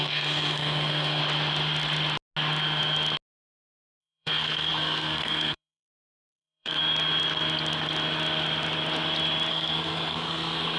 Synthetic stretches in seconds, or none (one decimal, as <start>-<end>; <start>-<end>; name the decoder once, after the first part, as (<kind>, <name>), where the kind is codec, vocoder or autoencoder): 0.0-1.2 (codec, SNAC); 4.0-6.8; 9.5-10.8